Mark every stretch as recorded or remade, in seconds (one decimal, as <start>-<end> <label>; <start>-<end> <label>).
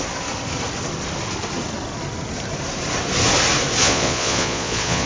0.0-3.8 recorded; 3.8-5.1 remade